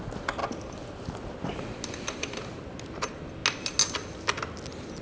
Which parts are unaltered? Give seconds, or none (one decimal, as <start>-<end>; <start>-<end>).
0.0-5.0